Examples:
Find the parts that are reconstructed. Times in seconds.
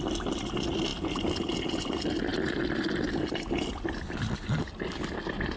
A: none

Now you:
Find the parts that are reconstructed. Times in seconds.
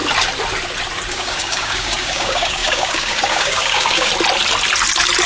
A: 1.1-4.1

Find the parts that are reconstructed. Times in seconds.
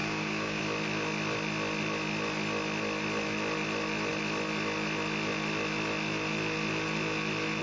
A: 0.0-0.6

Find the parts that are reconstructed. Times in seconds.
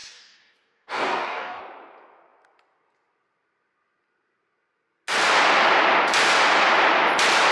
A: 0.0-1.6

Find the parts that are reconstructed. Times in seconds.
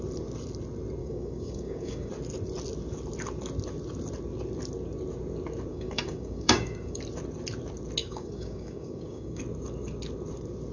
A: 1.0-2.1; 5.7-7.0; 8.0-9.4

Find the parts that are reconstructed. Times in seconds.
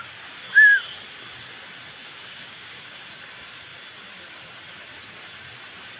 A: 2.0-3.0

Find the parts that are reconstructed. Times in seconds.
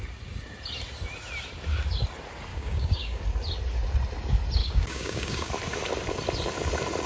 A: 2.5-3.2; 4.6-5.5